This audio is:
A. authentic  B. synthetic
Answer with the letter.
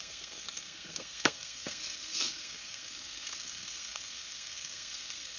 B